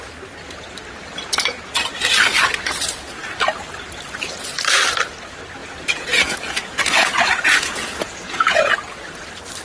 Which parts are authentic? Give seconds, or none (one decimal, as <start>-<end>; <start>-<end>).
0.0-5.6; 8.7-9.6

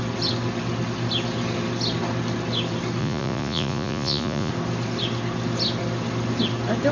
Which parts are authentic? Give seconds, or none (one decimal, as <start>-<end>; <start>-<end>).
0.0-3.0; 4.5-6.9

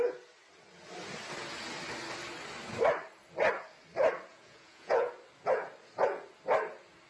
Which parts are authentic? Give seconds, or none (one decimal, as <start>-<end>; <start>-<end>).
0.0-4.3; 5.1-7.1

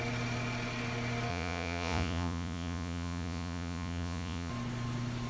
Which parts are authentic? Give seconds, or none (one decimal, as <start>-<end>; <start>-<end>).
0.0-1.3; 4.5-5.3

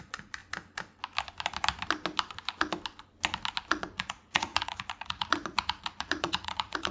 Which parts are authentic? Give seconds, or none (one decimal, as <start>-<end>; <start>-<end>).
0.4-3.8

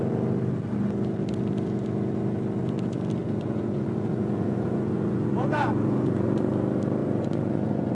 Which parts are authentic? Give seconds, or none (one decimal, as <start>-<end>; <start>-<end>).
0.0-3.2; 6.5-7.0

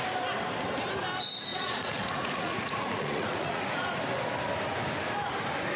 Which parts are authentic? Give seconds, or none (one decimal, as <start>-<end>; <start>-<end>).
0.0-1.5; 3.9-5.8